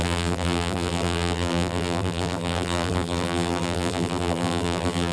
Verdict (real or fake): fake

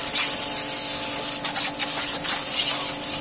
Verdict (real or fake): real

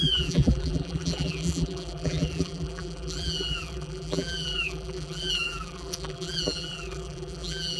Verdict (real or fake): fake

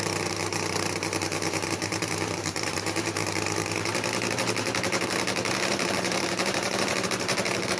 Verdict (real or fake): fake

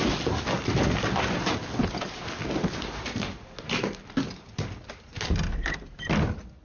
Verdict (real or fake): real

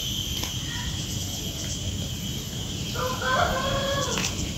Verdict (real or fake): real